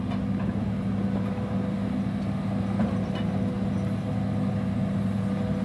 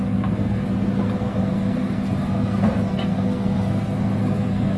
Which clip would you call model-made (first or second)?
second